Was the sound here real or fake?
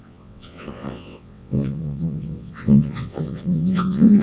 fake